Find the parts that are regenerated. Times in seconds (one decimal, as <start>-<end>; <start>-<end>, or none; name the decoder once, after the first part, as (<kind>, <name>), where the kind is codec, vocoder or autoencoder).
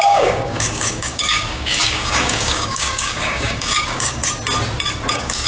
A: 0.0-4.2 (codec, DAC); 5.1-5.5